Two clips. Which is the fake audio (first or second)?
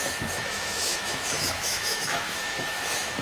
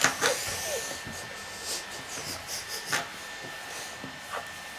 first